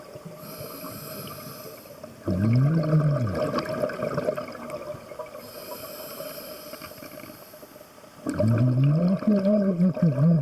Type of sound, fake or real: real